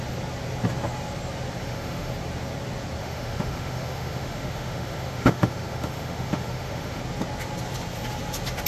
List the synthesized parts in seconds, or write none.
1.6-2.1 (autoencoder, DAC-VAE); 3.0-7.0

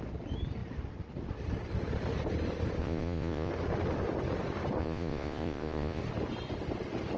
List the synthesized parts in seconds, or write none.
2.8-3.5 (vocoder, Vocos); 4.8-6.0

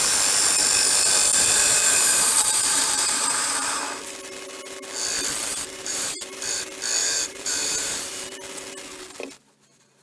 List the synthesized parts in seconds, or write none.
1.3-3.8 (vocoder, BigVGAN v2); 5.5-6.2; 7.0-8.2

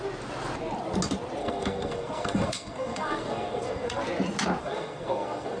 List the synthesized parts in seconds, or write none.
1.4-4.0 (codec, SNAC); 4.6-5.6

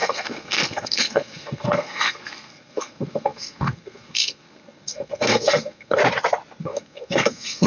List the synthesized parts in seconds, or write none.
0.0-6.0 (codec, SNAC); 6.6-7.7